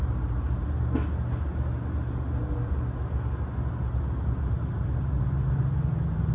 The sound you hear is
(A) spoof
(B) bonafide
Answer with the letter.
B